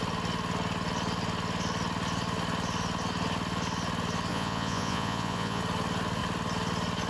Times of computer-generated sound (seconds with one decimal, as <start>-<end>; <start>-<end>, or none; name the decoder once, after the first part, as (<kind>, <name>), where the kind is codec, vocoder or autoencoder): 4.3-5.6 (vocoder, Vocos)